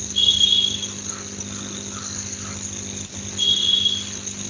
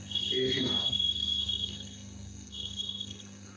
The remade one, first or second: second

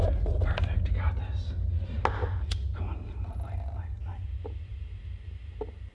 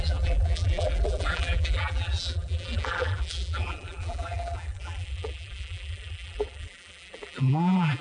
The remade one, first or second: second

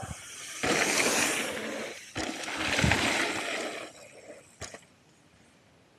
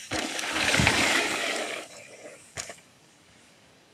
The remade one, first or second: second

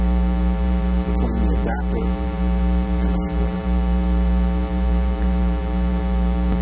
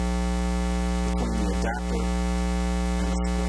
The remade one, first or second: first